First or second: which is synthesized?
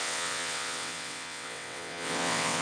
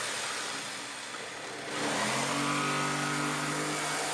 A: first